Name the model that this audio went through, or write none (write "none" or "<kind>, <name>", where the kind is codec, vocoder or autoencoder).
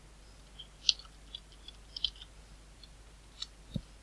none